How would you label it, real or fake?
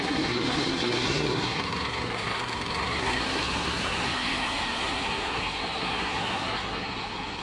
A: fake